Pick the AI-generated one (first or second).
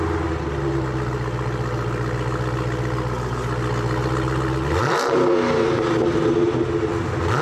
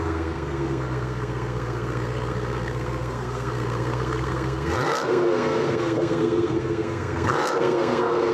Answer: second